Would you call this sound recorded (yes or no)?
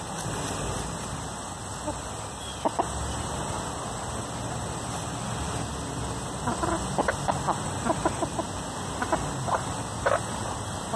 yes